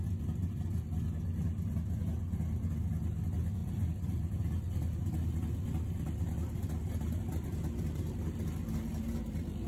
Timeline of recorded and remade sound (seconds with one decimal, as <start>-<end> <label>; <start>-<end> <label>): 0.0-9.7 recorded